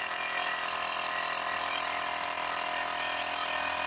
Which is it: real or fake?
real